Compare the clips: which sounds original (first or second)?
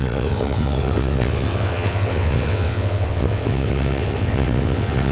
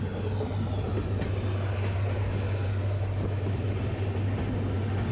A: second